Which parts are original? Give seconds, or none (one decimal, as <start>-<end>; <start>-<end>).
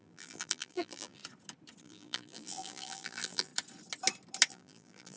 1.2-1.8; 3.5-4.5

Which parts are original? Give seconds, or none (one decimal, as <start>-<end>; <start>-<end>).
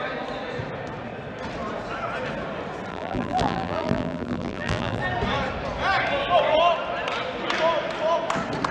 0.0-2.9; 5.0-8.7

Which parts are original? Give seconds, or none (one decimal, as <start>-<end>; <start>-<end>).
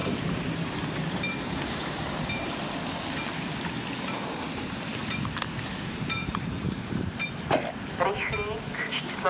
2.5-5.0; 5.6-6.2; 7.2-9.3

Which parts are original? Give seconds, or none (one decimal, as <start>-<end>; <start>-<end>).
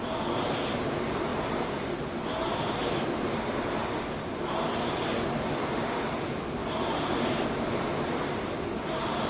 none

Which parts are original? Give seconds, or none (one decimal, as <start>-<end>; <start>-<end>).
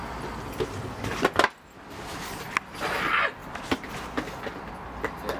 0.0-3.4; 4.4-5.4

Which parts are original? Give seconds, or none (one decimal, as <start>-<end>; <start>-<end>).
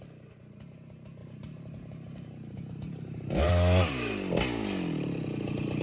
0.0-1.2; 3.5-5.8